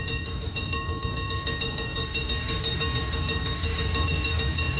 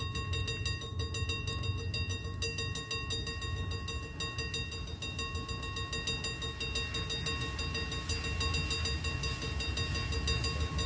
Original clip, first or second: second